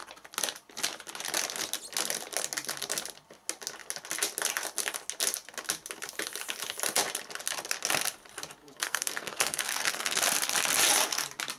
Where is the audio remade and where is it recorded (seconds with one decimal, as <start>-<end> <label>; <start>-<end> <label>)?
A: 0.0-8.6 recorded; 8.6-10.2 remade; 10.2-11.6 recorded